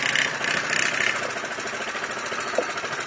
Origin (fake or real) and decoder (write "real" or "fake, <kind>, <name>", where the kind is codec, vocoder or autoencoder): real